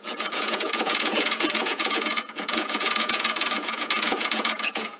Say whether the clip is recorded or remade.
remade